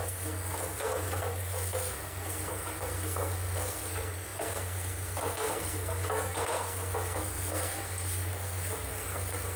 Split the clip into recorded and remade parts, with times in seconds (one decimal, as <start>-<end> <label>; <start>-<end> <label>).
0.0-9.6 remade